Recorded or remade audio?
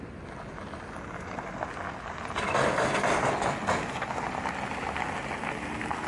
recorded